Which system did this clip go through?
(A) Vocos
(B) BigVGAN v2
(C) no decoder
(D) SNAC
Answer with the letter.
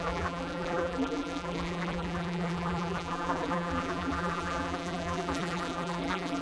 B